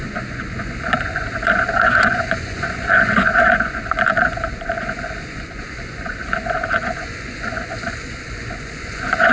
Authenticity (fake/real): fake